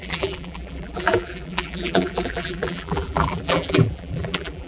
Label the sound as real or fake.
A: fake